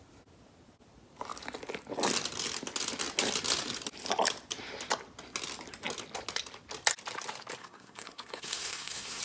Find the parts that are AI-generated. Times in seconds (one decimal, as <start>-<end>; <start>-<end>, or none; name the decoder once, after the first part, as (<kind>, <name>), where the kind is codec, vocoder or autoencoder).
7.6-9.2 (codec, SNAC)